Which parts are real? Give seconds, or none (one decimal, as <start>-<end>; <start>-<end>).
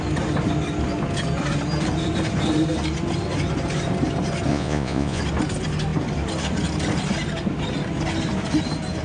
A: 0.0-4.5; 5.2-9.0